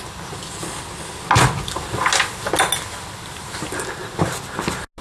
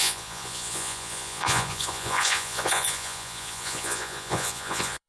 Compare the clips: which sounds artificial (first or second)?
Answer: second